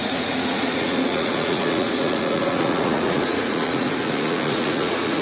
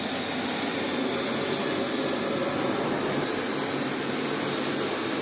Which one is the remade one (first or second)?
first